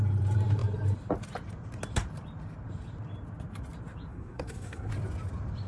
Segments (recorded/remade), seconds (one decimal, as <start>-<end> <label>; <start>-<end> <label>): 0.0-4.1 recorded; 4.1-4.9 remade; 4.9-5.7 recorded